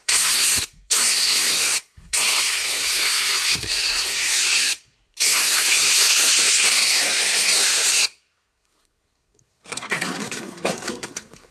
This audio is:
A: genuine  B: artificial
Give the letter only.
B